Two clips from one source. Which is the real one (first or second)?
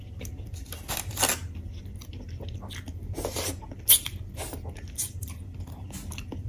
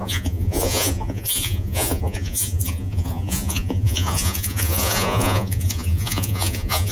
first